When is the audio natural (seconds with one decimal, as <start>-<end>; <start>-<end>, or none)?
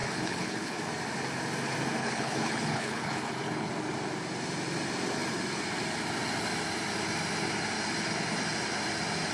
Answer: 0.9-2.0; 3.7-9.3